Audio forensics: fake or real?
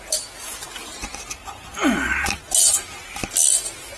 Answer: real